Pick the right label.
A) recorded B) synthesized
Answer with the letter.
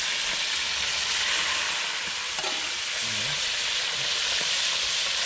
A